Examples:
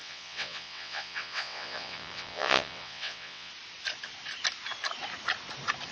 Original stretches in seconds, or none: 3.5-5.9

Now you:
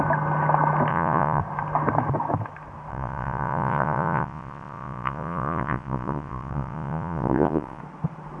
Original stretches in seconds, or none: 0.0-0.9; 1.4-2.9; 7.8-8.4